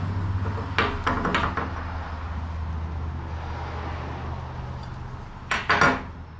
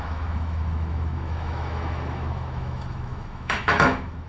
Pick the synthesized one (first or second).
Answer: second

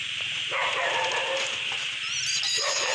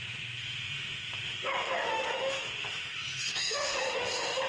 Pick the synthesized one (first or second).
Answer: second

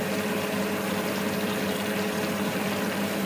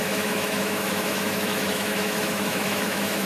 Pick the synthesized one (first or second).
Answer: second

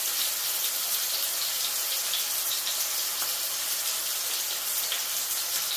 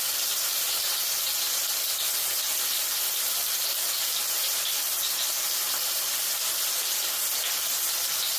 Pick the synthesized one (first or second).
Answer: second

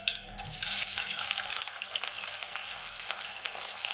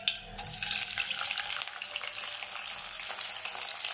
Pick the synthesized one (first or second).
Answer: first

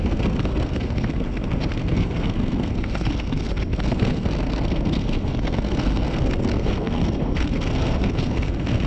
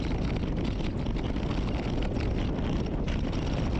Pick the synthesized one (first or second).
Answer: first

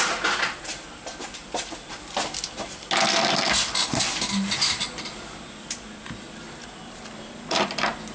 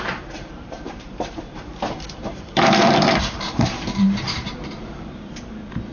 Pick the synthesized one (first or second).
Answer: second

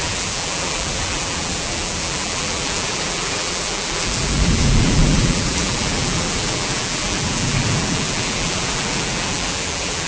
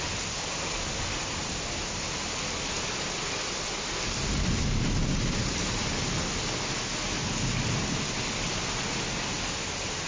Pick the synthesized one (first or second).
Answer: first